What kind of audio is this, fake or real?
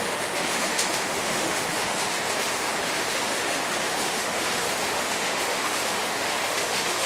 fake